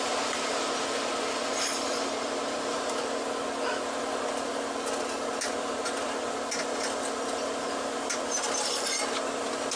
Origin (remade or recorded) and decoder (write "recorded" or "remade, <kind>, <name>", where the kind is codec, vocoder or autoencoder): recorded